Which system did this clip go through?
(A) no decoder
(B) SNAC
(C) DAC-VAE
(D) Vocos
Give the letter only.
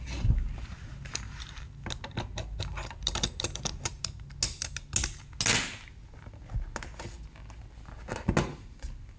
A